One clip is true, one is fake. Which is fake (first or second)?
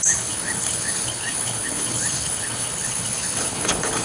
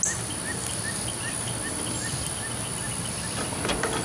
first